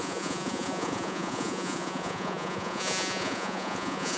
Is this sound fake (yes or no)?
yes